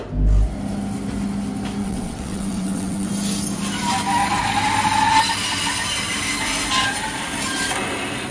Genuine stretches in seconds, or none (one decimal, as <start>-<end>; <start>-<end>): 0.0-1.8; 3.1-8.3